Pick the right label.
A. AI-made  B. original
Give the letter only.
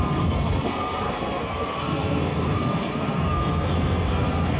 A